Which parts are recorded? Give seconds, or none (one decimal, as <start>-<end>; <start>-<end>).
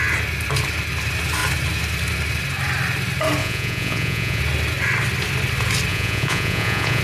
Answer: 0.0-3.4; 4.4-5.9